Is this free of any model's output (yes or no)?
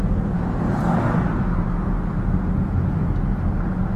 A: yes